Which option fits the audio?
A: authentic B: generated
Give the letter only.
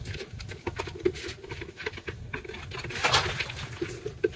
A